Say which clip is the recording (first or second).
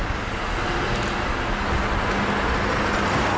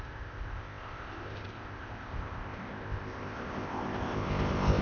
first